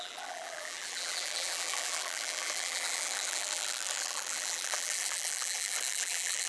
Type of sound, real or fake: fake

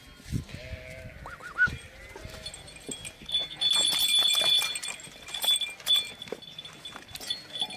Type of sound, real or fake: real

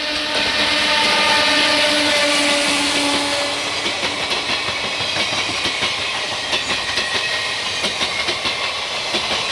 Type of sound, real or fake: real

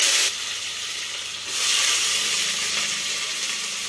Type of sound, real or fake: real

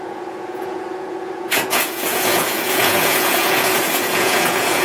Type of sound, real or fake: fake